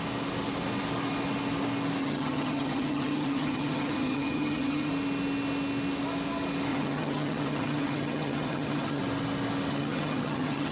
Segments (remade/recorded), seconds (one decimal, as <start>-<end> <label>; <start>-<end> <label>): 0.0-2.0 recorded; 2.0-4.9 remade; 4.9-6.7 recorded; 6.7-9.0 remade; 9.0-9.7 recorded; 9.7-10.7 remade